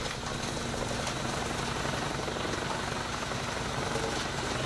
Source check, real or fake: real